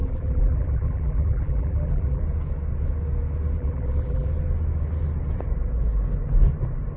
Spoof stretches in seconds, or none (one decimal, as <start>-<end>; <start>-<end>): 0.0-2.2; 3.6-4.3